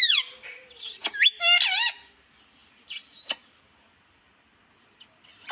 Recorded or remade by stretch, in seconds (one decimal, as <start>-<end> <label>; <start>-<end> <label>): 0.0-5.5 recorded